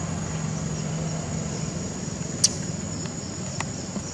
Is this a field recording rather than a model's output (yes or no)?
yes